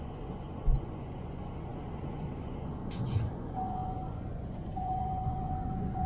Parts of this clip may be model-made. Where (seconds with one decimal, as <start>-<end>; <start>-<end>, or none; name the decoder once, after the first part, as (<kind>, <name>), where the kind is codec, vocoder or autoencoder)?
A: 0.0-6.1 (vocoder, Vocos)